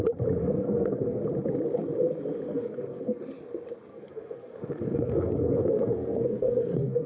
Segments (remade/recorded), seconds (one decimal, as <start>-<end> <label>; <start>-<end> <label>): 0.0-0.4 recorded; 0.4-1.2 remade; 1.2-2.5 recorded; 2.5-3.2 remade; 3.2-3.9 recorded; 3.9-7.1 remade